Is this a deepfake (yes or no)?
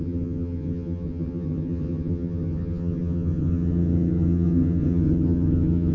yes